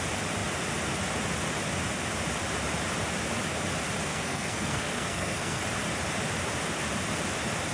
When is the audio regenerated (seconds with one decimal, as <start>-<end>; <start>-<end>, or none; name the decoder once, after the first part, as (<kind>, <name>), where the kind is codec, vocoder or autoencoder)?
4.1-5.6 (codec, SNAC)